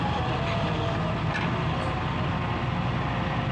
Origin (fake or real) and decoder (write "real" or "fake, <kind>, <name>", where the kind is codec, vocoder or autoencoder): real